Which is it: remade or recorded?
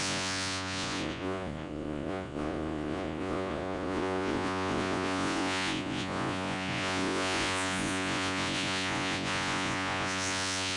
remade